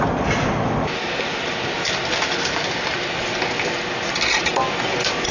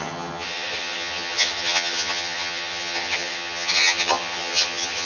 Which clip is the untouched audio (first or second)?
first